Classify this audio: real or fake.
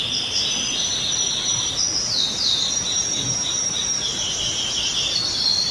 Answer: real